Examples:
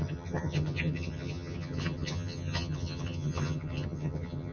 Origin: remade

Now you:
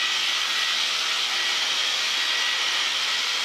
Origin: recorded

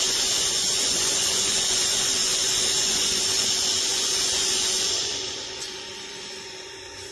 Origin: remade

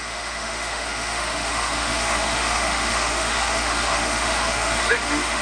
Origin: remade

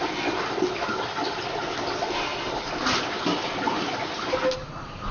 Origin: recorded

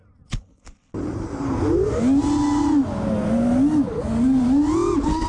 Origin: recorded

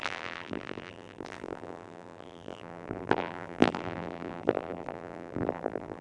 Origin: remade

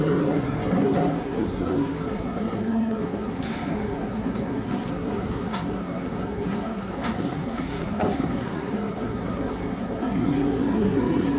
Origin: remade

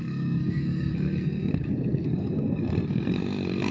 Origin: remade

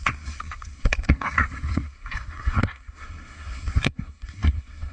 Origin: remade